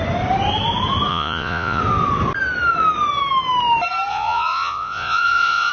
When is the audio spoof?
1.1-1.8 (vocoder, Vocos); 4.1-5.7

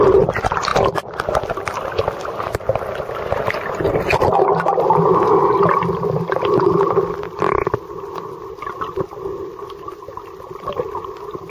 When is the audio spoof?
none

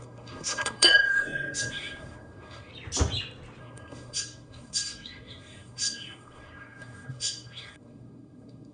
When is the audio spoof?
0.0-2.7 (codec, SNAC); 3.6-8.7

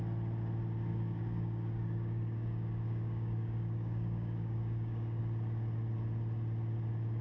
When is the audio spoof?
0.9-5.2 (codec, DAC)

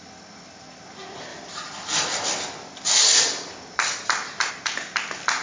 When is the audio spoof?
1.3-4.5 (vocoder, BigVGAN v2)

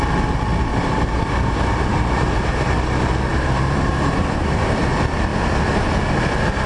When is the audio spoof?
0.7-2.7 (vocoder, BigVGAN v2); 3.3-4.8